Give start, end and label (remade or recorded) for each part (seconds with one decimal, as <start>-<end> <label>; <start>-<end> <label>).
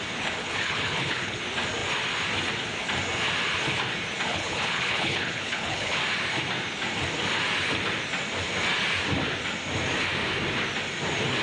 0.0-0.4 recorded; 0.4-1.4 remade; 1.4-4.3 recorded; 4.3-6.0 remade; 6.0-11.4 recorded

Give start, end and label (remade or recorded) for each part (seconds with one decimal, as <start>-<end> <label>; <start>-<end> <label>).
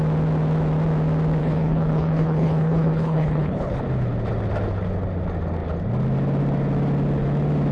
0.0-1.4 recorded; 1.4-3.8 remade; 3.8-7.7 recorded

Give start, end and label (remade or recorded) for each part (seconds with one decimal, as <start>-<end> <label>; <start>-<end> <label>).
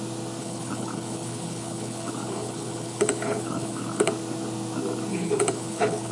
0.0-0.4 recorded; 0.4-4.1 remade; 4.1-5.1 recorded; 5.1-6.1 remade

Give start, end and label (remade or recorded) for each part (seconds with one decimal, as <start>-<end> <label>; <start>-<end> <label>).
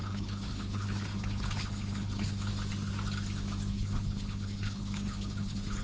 0.0-2.5 remade; 2.5-3.7 recorded; 3.7-5.8 remade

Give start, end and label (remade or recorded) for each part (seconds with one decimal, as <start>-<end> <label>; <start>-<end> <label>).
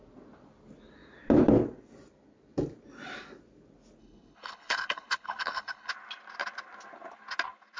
0.0-4.0 recorded; 4.0-5.9 remade; 5.9-7.8 recorded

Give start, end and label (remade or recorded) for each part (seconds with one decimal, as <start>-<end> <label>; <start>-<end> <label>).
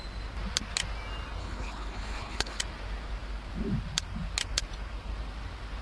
0.0-1.4 recorded; 1.4-2.6 remade; 2.6-5.8 recorded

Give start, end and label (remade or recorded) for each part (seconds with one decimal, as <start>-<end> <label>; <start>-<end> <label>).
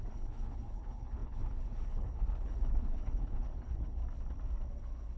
0.0-4.0 remade; 4.0-4.7 recorded; 4.7-5.2 remade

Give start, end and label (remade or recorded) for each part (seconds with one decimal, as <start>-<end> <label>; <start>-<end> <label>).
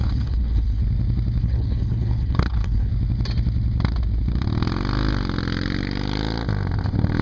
0.0-0.8 remade; 0.8-1.4 recorded; 1.4-2.9 remade; 2.9-7.2 recorded